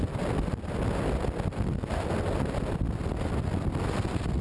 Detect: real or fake real